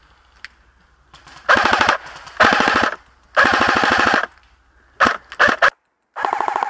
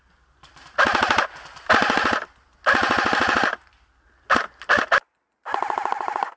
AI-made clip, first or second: second